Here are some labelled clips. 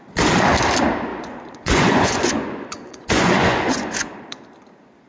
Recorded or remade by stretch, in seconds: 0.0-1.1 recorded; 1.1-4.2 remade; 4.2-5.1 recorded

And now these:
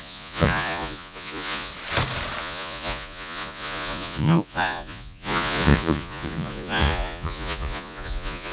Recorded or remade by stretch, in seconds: 0.0-1.7 remade; 1.7-2.4 recorded; 2.4-8.5 remade

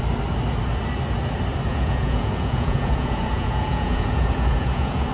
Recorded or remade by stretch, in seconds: 0.0-1.7 recorded; 1.7-5.1 remade